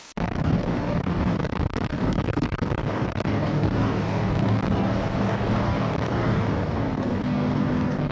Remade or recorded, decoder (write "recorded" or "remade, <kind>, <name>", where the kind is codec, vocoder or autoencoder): remade, codec, DAC